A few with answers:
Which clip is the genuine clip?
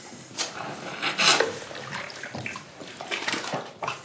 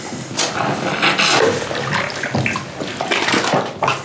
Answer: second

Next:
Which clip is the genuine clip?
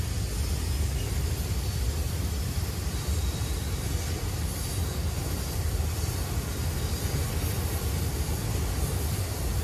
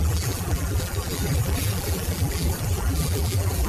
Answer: first